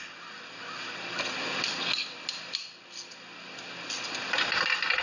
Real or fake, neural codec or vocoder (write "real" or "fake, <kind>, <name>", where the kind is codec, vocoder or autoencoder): real